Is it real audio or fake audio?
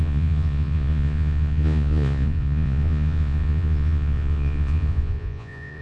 fake